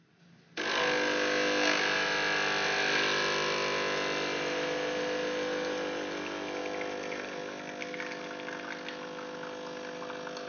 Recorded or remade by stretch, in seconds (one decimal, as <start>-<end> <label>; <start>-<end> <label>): 0.0-10.5 recorded